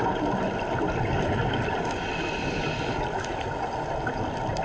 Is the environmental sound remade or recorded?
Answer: recorded